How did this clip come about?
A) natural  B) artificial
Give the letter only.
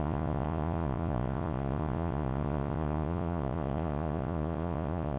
B